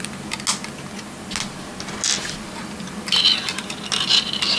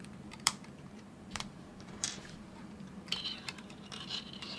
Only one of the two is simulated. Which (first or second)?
second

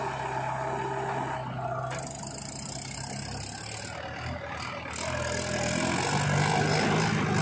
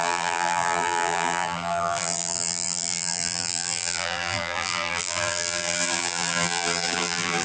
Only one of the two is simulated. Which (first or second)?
second